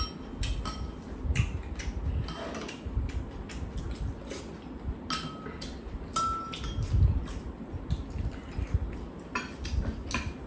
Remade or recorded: recorded